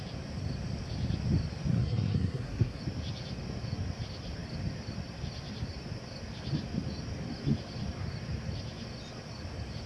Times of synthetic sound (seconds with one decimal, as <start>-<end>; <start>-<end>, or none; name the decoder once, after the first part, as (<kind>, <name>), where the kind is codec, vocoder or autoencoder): 1.7-2.8 (codec, SNAC)